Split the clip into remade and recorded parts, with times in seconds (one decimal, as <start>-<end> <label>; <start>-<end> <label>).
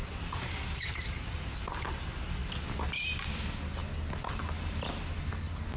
0.0-5.8 recorded